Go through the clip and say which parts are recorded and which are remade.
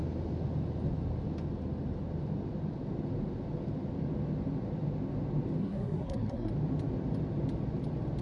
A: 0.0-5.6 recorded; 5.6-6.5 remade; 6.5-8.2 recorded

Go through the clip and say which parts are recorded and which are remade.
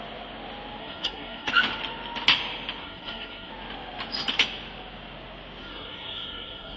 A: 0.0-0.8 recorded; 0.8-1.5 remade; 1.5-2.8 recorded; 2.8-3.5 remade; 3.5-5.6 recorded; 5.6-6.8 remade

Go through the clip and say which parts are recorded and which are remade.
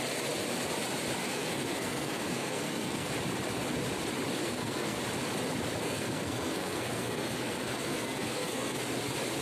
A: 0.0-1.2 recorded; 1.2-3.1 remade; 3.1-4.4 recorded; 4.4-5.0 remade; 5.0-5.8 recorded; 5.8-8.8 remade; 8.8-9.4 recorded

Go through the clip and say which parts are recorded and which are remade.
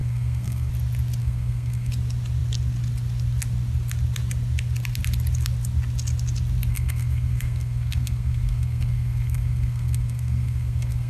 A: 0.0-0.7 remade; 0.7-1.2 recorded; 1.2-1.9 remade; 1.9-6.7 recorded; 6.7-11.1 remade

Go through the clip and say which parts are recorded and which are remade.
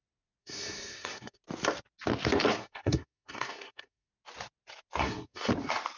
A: 0.0-0.4 recorded; 0.4-1.4 remade; 1.4-2.5 recorded; 2.5-4.1 remade; 4.1-5.0 recorded; 5.0-5.5 remade; 5.5-6.0 recorded